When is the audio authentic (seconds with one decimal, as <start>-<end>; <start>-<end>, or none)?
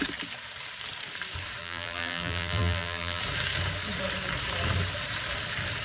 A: 0.0-1.6; 3.2-5.8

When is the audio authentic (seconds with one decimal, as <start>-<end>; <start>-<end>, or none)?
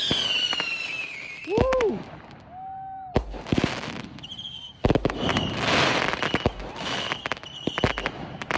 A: 0.0-3.5; 6.6-8.6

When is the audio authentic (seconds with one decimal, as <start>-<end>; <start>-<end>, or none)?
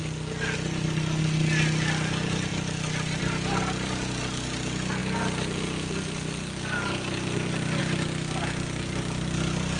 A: 0.0-9.8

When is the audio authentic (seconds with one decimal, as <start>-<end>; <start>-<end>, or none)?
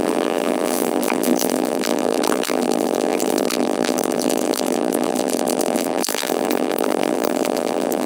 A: none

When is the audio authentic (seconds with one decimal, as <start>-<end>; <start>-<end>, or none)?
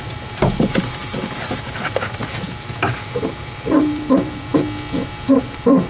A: 4.5-5.3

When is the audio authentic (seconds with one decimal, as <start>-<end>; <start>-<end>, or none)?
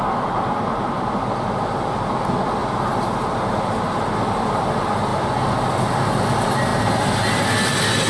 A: 0.0-5.1; 5.7-8.1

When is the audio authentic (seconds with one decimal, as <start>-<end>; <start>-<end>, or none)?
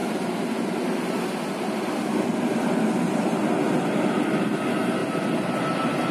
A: 0.0-6.1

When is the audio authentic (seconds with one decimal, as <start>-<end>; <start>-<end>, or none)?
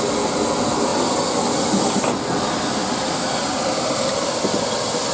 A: 0.0-5.1